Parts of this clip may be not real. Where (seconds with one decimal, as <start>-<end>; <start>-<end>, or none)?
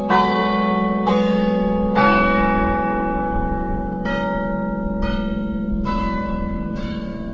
0.0-4.1; 5.7-7.3